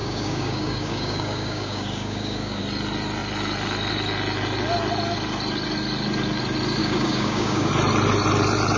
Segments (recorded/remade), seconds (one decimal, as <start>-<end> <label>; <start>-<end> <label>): 0.0-2.6 remade; 2.6-6.8 recorded; 6.8-7.7 remade; 7.7-8.8 recorded